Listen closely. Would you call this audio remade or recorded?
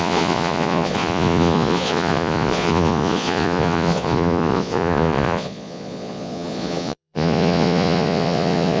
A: remade